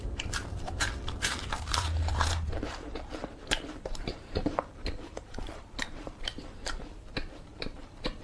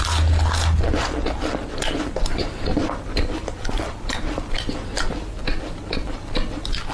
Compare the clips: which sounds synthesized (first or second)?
first